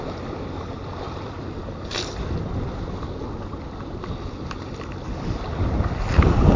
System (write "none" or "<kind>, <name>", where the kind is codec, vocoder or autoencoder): none